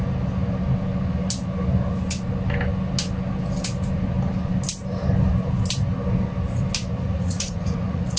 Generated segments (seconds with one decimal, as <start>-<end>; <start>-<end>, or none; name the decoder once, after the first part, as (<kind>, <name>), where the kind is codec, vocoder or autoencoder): 7.1-8.2 (vocoder, Vocos)